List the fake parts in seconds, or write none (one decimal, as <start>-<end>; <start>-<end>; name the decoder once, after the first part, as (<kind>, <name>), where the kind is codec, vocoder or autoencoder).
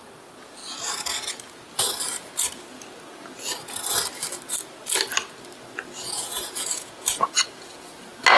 6.0-7.9 (vocoder, Vocos)